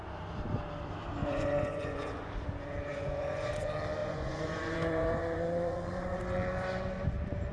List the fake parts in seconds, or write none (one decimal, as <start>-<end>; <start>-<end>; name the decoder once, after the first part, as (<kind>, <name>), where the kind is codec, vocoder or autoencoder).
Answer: 1.2-2.3 (vocoder, Vocos); 2.9-3.5; 4.0-6.2